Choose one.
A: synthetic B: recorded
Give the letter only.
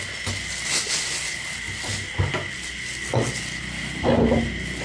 B